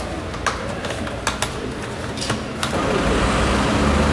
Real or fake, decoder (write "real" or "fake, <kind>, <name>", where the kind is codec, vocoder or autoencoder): real